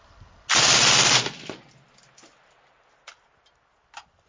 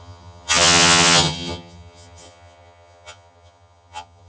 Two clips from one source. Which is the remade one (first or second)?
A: second